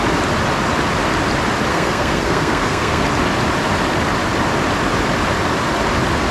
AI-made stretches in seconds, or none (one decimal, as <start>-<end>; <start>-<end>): 1.7-3.0